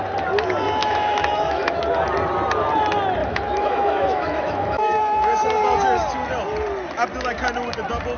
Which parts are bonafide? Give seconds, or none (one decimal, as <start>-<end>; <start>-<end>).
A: 0.0-0.8; 1.8-3.2; 5.5-8.2